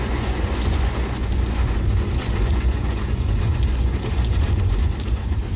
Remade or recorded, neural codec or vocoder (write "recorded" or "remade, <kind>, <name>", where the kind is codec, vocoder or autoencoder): remade, vocoder, Vocos